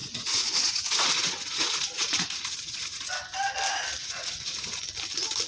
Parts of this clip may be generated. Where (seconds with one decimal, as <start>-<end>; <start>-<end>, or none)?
0.0-3.1; 4.0-4.8